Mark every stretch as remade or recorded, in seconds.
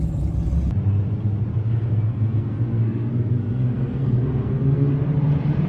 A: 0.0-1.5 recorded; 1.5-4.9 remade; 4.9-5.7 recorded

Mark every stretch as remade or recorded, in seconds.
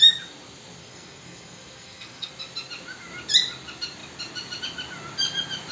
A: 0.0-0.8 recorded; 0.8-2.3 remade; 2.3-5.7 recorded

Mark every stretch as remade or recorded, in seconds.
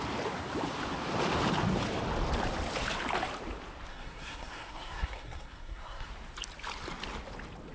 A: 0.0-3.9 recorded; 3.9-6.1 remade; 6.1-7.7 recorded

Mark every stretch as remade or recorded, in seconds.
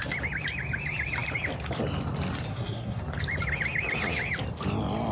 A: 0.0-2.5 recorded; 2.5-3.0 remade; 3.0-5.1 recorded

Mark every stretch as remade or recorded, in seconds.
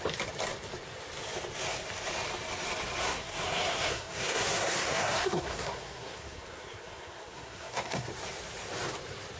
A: 0.0-3.0 recorded; 3.0-8.1 remade; 8.1-9.4 recorded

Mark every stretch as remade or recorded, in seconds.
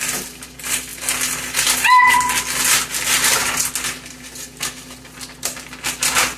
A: 0.0-6.4 recorded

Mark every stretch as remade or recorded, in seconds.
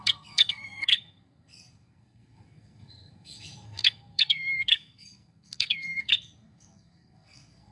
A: 0.0-7.7 remade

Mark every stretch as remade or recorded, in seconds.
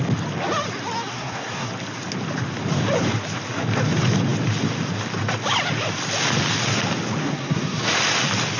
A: 0.0-1.1 recorded; 1.1-1.7 remade; 1.7-7.2 recorded; 7.2-7.8 remade; 7.8-8.6 recorded